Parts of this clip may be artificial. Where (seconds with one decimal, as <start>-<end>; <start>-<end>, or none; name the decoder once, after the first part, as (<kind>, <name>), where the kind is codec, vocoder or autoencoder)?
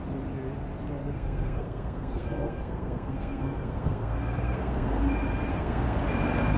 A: 1.0-5.0 (codec, SNAC); 5.5-6.0